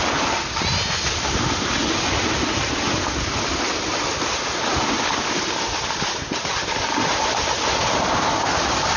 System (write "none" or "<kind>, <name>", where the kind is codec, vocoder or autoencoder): none